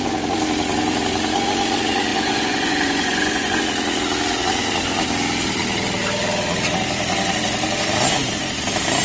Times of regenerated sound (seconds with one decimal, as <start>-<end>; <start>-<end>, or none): 2.1-3.6